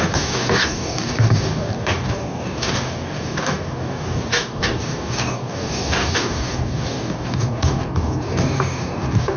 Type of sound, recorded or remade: remade